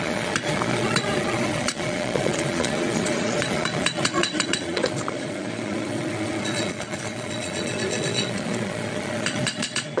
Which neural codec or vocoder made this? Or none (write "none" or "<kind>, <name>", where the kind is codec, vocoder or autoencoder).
vocoder, Vocos